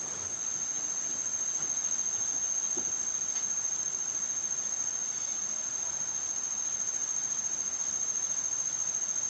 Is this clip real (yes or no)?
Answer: yes